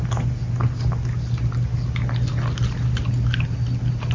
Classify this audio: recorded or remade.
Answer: recorded